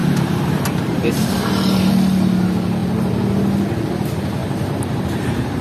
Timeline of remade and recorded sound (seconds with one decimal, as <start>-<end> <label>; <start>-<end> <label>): 0.0-1.9 remade; 1.9-4.4 recorded; 4.4-5.6 remade